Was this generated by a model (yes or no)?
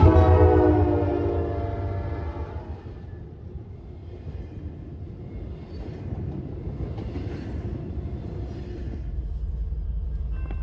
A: no